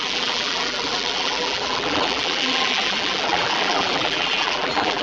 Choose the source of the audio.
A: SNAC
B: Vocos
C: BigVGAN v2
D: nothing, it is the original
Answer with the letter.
C